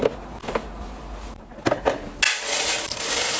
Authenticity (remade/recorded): recorded